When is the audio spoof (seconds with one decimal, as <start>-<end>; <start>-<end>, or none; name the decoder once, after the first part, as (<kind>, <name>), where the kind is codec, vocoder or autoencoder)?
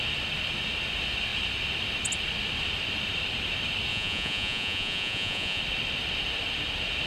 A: 3.9-5.6 (vocoder, Vocos)